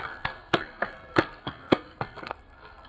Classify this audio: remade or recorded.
remade